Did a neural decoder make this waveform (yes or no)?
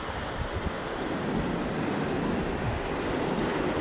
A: no